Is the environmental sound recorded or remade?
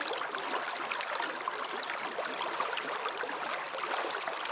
recorded